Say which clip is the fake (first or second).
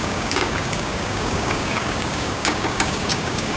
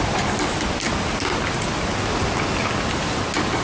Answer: first